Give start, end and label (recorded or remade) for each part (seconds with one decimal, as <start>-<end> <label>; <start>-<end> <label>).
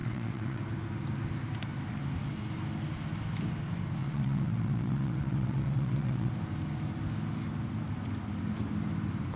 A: 0.0-0.6 remade; 0.6-4.0 recorded; 4.0-6.3 remade; 6.3-9.4 recorded